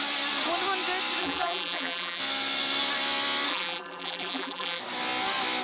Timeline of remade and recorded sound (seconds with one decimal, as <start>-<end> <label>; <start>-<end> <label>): 0.0-1.2 recorded; 1.2-2.2 remade; 2.2-3.5 recorded; 3.5-4.8 remade; 4.8-5.6 recorded